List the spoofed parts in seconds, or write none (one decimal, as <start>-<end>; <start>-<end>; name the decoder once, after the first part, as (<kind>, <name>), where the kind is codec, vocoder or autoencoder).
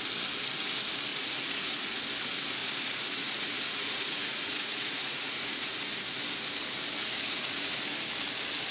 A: 1.1-1.9 (vocoder, Vocos); 2.6-5.7; 7.0-7.8